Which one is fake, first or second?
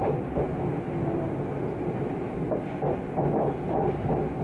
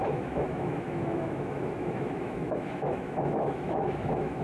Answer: second